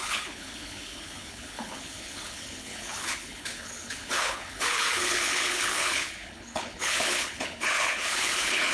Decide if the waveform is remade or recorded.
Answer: remade